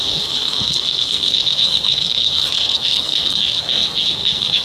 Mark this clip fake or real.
fake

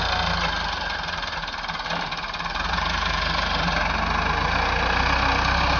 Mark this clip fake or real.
real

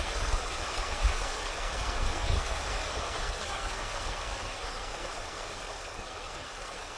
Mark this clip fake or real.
fake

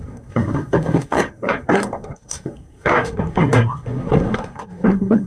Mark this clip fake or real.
fake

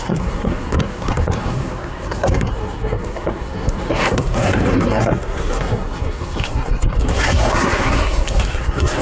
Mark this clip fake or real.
fake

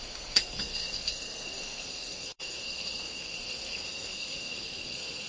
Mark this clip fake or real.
fake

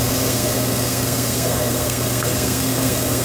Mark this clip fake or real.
fake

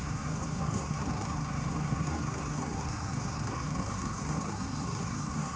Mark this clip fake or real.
fake